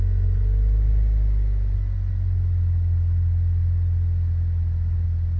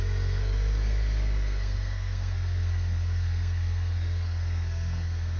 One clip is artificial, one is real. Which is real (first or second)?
first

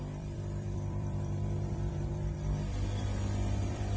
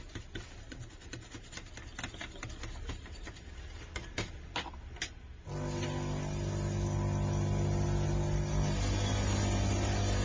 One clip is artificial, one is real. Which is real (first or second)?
second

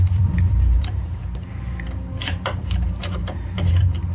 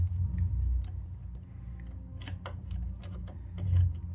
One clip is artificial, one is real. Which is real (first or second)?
second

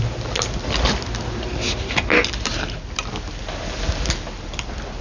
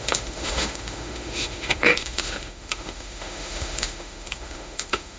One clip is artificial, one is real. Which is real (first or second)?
first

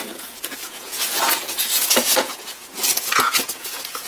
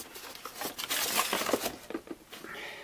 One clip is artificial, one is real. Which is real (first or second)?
second